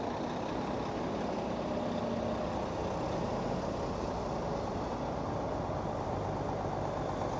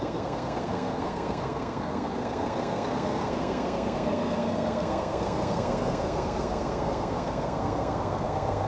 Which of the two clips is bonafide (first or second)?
first